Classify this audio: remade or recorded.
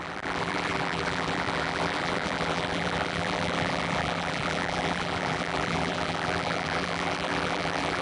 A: remade